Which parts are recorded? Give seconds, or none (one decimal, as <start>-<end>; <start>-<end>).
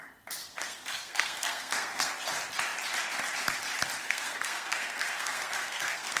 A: 0.0-0.4; 2.1-4.0